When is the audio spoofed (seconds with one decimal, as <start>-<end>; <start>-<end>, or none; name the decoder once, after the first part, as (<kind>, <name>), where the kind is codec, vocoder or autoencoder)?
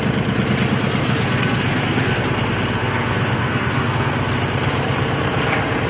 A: 1.0-2.2 (codec, SNAC); 2.8-4.1